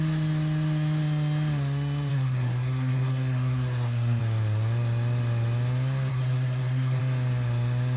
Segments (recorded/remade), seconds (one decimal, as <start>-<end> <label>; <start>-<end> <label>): 0.0-2.1 recorded; 2.1-4.2 remade; 4.2-6.1 recorded; 6.1-7.0 remade; 7.0-8.0 recorded

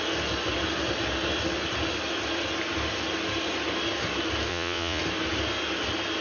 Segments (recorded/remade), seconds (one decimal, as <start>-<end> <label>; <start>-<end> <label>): 0.0-4.5 recorded; 4.5-5.0 remade; 5.0-6.2 recorded